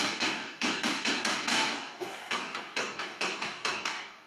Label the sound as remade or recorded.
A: remade